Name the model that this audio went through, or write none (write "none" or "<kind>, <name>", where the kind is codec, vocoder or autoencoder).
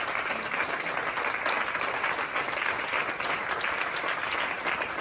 none